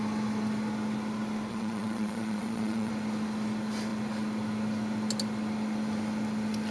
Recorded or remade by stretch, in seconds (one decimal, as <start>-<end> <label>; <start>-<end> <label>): 0.0-1.5 recorded; 1.5-2.9 remade; 2.9-6.7 recorded